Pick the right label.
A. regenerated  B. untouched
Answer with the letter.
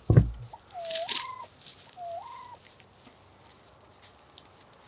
B